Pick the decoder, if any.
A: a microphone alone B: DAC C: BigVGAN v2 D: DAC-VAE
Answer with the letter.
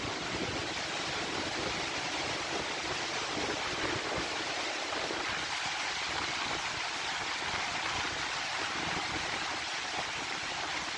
A